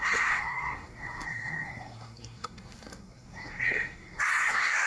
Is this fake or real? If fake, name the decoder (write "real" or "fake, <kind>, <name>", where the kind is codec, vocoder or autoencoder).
fake, codec, SNAC